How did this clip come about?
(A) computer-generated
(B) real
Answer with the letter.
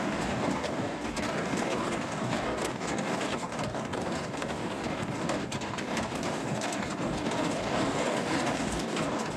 A